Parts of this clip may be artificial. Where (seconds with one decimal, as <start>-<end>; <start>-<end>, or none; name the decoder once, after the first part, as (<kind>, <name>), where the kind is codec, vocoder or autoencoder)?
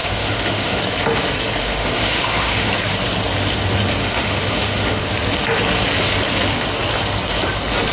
0.0-0.8 (autoencoder, DAC-VAE); 1.6-2.7; 4.0-5.0